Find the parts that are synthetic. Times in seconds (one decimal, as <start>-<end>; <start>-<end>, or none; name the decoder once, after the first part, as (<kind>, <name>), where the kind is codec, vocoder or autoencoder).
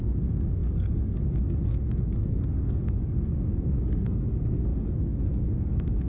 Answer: 0.0-6.1 (codec, SNAC)